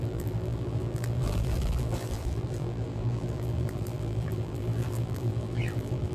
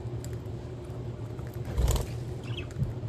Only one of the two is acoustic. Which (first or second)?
second